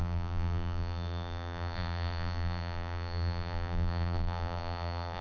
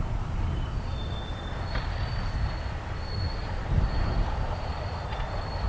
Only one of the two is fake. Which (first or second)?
first